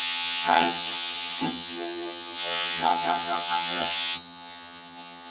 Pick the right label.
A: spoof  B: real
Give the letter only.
A